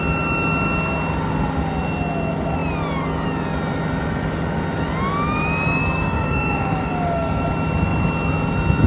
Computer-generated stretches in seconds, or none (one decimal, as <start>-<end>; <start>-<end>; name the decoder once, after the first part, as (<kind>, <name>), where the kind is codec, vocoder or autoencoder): 5.8-7.4 (codec, DAC)